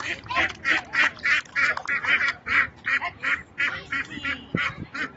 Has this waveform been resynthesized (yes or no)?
yes